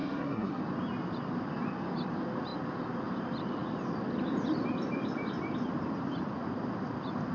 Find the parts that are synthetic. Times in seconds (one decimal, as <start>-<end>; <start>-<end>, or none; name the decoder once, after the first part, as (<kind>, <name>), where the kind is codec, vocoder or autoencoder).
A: 0.0-0.6 (codec, SNAC)